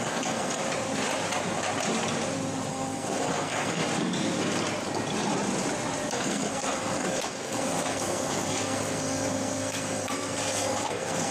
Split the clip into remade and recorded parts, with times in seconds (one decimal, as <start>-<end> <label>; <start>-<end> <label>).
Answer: 0.0-0.6 remade; 0.6-2.7 recorded; 2.7-3.8 remade; 3.8-6.1 recorded; 6.1-11.3 remade